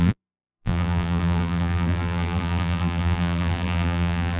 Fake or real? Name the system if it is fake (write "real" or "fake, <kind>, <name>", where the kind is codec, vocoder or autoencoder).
fake, vocoder, BigVGAN v2